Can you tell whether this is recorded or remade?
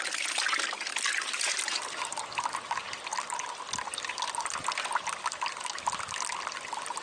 recorded